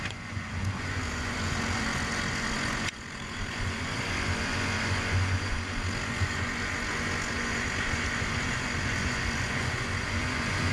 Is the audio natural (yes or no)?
no